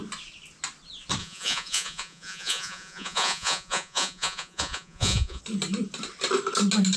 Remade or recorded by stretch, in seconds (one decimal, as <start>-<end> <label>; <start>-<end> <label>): 0.0-1.2 recorded; 1.2-5.4 remade; 5.4-7.0 recorded